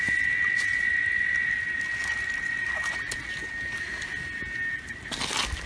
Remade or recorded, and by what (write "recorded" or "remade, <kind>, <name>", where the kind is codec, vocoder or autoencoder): recorded